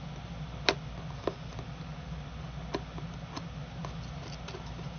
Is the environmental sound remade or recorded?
recorded